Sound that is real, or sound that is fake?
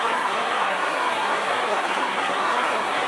fake